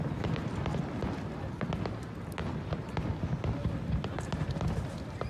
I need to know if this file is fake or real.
real